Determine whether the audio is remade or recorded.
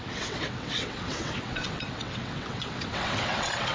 remade